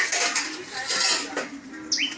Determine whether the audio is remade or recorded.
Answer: recorded